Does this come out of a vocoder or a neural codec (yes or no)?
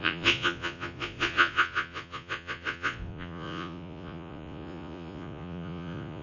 yes